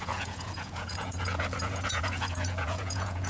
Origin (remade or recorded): remade